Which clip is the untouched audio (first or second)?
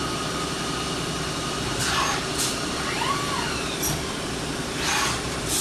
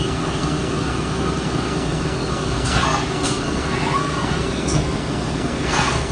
first